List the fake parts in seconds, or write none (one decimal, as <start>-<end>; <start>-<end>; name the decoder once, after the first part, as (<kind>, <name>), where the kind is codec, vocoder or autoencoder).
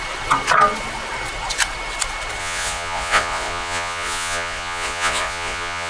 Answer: 2.4-5.9 (vocoder, Vocos)